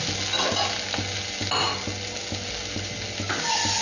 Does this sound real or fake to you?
real